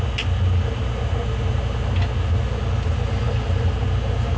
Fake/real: real